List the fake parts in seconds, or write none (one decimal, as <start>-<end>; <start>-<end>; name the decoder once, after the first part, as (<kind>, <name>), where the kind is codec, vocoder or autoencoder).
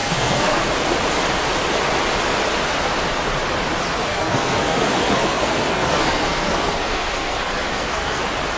0.0-0.6 (codec, SNAC); 4.1-8.2